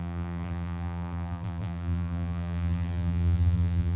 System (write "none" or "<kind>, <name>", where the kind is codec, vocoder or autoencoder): vocoder, BigVGAN v2